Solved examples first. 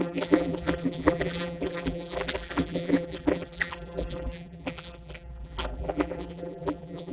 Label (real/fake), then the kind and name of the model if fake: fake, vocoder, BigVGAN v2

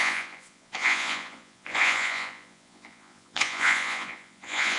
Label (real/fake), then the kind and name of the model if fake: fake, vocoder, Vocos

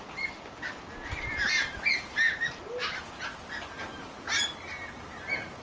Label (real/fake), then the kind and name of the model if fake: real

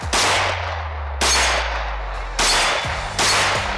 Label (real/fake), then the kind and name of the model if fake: real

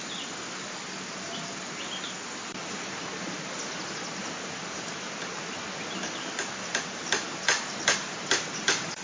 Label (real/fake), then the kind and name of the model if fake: real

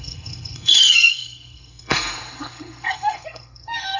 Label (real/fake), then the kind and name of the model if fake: fake, codec, SNAC